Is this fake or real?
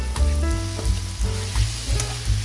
real